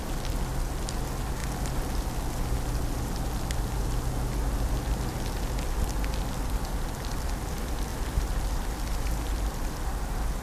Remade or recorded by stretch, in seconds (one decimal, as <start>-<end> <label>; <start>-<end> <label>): 0.0-10.4 recorded